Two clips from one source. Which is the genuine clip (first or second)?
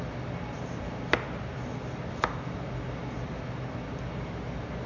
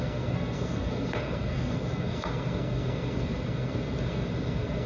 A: first